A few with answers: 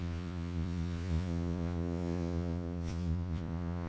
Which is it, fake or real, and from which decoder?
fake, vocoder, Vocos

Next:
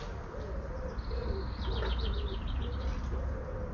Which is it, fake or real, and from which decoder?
real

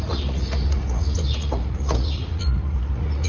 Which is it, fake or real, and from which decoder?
fake, vocoder, Vocos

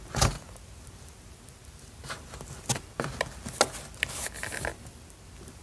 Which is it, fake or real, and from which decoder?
real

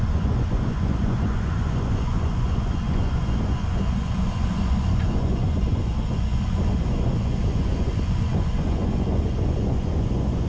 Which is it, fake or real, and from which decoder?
fake, vocoder, Vocos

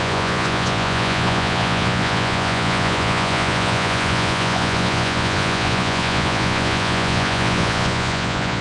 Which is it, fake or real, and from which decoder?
fake, vocoder, Vocos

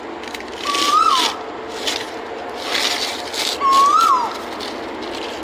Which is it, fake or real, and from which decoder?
real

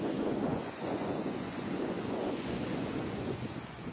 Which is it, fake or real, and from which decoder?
fake, vocoder, Vocos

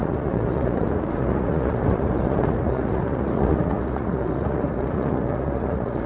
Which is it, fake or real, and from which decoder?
fake, vocoder, Vocos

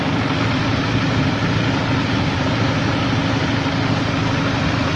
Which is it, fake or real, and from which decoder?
real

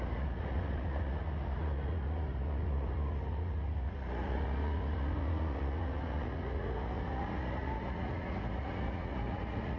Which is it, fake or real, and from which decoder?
fake, vocoder, Vocos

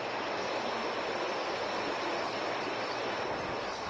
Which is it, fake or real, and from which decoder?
real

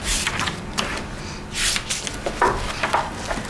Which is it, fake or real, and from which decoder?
real